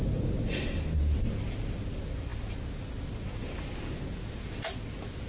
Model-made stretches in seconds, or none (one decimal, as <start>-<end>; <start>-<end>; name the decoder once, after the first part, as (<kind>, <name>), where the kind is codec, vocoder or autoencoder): none